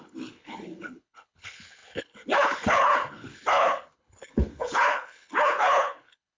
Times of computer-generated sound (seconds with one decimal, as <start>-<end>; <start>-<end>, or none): 0.0-6.4